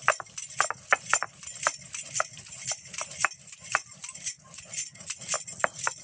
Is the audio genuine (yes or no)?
yes